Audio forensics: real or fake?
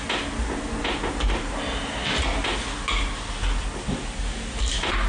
real